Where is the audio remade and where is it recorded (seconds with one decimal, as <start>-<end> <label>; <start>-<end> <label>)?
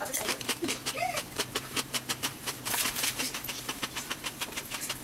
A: 0.0-5.0 remade